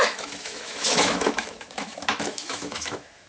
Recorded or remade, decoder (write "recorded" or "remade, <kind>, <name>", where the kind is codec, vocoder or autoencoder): remade, autoencoder, DAC-VAE